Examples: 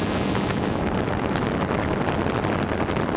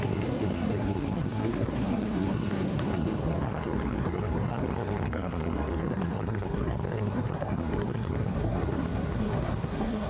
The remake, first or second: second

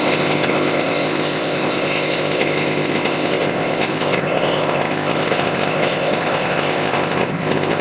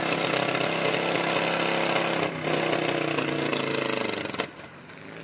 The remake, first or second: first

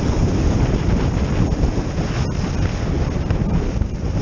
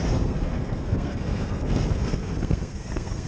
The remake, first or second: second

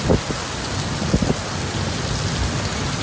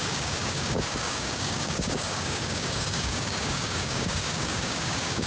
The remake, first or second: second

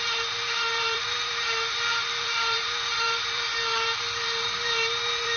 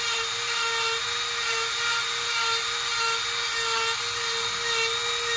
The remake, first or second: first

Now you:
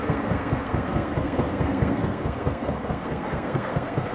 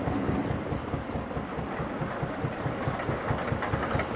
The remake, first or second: first